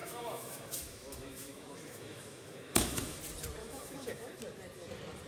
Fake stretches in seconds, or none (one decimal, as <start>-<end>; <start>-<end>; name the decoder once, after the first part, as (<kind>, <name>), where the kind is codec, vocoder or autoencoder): 0.0-3.2 (autoencoder, DAC-VAE); 3.6-4.4